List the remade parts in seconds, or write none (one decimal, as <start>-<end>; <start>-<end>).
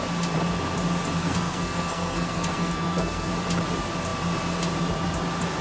1.2-3.3